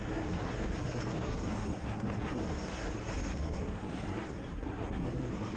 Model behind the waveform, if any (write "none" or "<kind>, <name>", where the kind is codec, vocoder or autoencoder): codec, SNAC